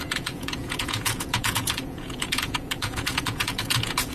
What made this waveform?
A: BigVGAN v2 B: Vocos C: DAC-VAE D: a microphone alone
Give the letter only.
B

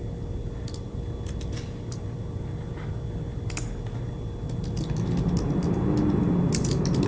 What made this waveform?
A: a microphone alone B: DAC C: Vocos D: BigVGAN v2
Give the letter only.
A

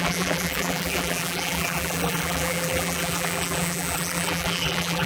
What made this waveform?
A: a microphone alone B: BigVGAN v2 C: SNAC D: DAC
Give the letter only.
B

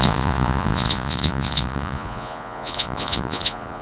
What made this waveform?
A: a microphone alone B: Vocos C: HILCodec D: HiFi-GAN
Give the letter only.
B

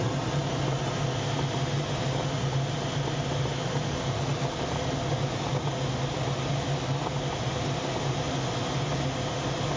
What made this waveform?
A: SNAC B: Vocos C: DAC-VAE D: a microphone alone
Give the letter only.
D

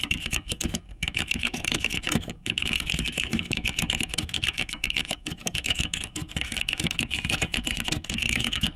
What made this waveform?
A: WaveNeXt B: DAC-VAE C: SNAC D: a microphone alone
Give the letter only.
C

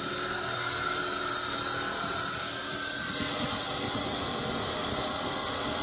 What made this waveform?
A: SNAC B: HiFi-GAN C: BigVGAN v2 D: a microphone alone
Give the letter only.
D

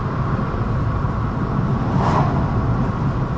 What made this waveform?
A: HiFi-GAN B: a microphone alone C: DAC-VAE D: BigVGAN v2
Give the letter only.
B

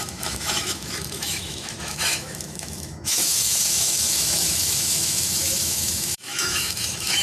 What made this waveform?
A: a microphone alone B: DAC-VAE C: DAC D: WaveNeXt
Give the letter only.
B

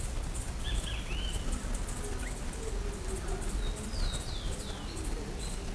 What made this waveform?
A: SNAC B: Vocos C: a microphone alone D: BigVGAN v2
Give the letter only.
C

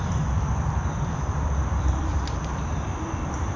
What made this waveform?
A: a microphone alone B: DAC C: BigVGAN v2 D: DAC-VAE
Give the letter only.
C